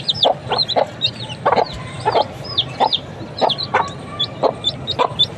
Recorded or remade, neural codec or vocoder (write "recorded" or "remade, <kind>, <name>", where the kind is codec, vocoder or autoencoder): remade, vocoder, BigVGAN v2